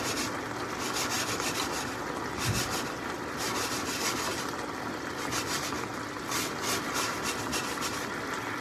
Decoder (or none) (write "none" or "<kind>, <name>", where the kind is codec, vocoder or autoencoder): none